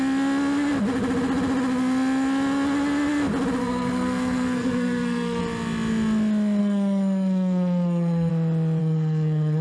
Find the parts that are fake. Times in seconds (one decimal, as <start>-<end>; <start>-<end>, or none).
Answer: 3.6-5.4; 6.6-8.3; 8.8-9.6